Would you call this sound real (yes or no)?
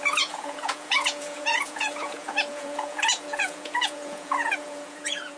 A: no